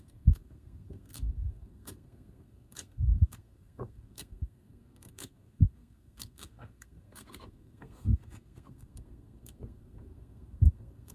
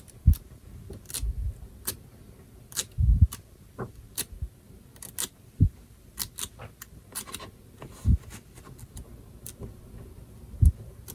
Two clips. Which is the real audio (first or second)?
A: second